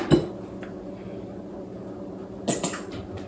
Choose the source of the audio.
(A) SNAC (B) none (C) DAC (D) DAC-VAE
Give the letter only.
B